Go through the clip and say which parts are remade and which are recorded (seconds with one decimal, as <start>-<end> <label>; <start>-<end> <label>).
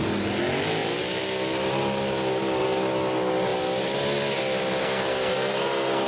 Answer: 0.0-4.8 recorded; 4.8-6.1 remade